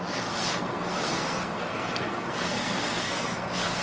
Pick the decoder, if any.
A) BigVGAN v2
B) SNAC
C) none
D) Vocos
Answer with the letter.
B